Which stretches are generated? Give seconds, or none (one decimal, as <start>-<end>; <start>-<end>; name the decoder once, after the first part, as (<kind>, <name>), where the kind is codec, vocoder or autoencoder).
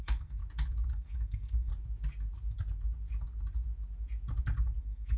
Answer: 0.0-0.4 (codec, SNAC); 0.9-1.7; 4.8-5.2